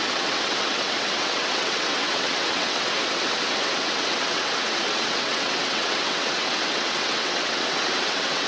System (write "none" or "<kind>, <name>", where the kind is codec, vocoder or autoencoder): vocoder, WaveNeXt